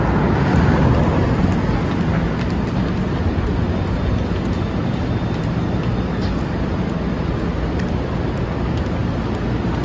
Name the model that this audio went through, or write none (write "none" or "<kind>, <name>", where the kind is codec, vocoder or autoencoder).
none